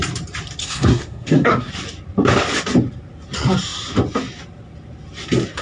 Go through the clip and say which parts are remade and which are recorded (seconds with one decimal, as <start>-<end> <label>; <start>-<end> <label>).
0.0-0.6 recorded; 0.6-1.7 remade; 1.7-5.6 recorded